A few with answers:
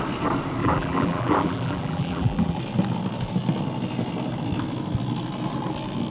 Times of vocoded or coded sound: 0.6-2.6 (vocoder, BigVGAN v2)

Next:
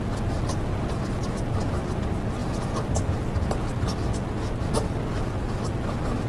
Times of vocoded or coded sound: 2.4-3.0 (vocoder, BigVGAN v2)

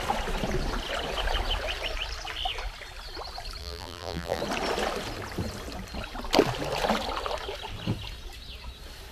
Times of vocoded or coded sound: 3.6-4.4 (vocoder, BigVGAN v2)

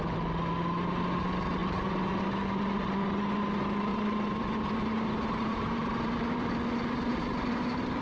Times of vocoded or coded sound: 1.6-2.1 (vocoder, BigVGAN v2); 3.9-6.5; 7.1-8.0

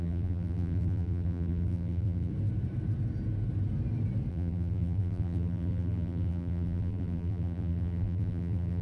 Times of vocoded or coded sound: 0.0-2.3 (vocoder, BigVGAN v2); 4.3-8.8

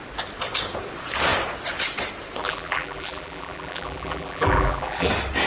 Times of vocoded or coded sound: 2.4-5.1 (vocoder, BigVGAN v2)